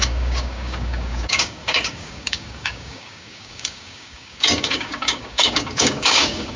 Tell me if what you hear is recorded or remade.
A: remade